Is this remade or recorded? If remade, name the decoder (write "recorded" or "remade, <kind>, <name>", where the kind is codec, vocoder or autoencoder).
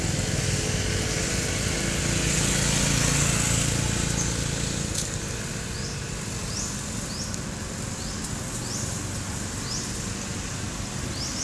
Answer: recorded